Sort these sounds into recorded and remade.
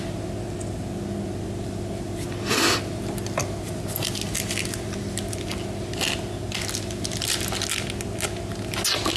recorded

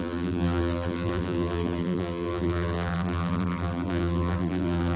remade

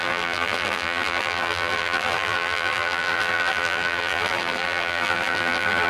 remade